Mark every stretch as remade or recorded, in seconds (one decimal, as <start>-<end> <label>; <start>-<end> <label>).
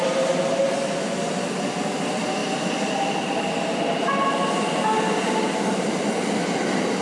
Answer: 0.0-7.0 recorded